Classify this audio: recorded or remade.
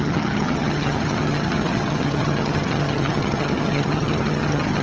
remade